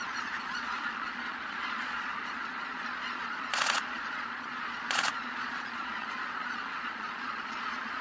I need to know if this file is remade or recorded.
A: remade